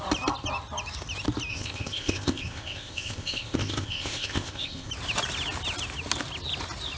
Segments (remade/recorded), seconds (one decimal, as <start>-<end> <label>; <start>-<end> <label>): 0.0-1.5 recorded; 1.5-4.9 remade; 4.9-7.0 recorded